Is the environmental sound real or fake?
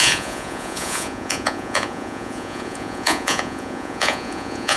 fake